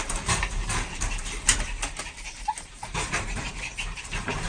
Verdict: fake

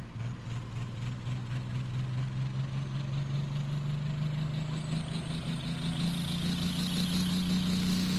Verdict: real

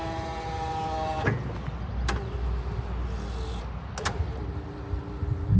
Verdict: real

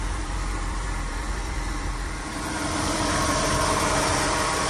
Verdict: fake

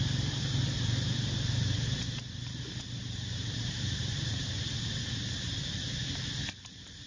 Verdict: fake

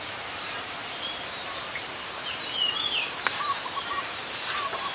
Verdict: fake